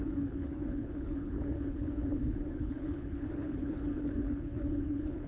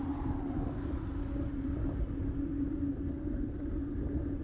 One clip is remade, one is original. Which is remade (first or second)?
first